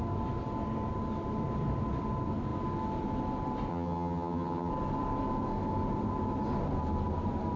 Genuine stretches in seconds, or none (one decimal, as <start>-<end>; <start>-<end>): 0.0-3.7; 4.7-7.6